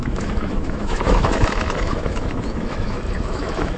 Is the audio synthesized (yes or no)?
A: yes